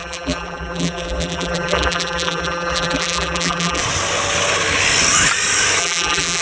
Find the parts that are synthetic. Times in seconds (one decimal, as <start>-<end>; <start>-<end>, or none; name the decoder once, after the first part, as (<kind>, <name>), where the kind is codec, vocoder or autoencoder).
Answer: 0.0-3.8 (vocoder, BigVGAN v2); 5.8-6.4